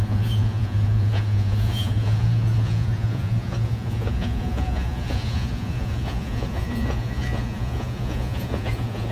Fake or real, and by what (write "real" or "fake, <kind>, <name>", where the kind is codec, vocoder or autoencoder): fake, vocoder, Vocos